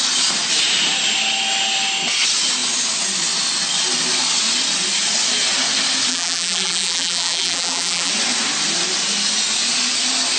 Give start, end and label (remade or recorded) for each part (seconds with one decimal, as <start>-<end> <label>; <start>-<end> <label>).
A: 0.0-6.1 recorded; 6.1-8.1 remade; 8.1-10.4 recorded

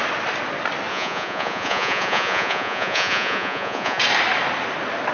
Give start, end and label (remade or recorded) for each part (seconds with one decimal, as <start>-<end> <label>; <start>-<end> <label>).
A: 0.0-0.9 recorded; 0.9-4.0 remade; 4.0-5.1 recorded